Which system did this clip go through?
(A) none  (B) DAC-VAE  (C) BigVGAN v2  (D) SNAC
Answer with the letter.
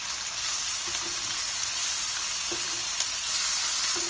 A